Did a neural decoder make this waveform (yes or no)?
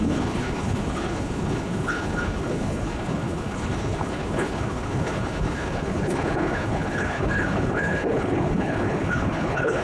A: yes